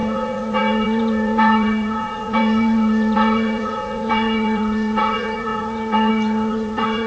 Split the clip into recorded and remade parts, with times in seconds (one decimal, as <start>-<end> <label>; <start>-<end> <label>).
0.0-7.1 remade